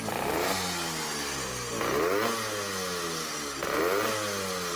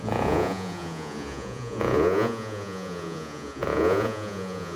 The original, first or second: first